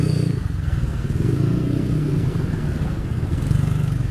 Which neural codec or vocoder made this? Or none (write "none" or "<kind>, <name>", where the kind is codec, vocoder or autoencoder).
codec, SNAC